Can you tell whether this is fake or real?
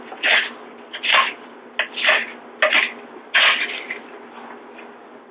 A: real